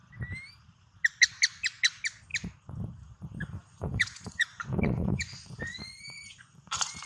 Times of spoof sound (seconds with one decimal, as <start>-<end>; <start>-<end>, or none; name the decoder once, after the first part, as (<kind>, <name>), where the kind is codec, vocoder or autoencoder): 3.7-7.1 (vocoder, Vocos)